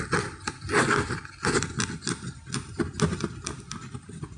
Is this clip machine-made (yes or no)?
no